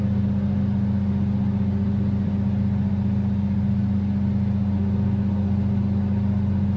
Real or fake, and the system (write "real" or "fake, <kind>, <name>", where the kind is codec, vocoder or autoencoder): real